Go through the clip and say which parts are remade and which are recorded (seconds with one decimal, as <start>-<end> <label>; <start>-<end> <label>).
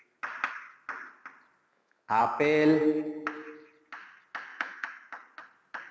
0.0-1.7 recorded; 1.7-2.2 remade; 2.2-4.5 recorded; 4.5-5.1 remade; 5.1-5.9 recorded